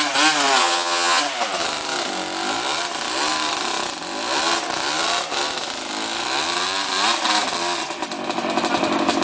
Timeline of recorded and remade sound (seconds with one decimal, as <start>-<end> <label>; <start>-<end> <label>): 0.0-0.6 recorded; 0.6-1.2 remade; 1.2-9.2 recorded